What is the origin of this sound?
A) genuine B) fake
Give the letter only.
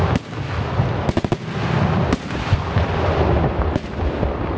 A